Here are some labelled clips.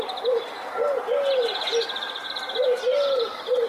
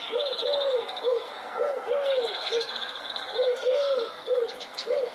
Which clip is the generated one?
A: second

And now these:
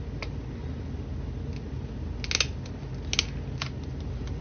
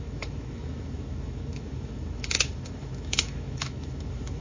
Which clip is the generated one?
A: second